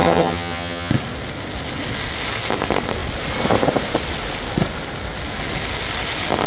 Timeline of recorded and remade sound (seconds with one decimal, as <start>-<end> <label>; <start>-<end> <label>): 0.0-0.9 remade; 0.9-6.5 recorded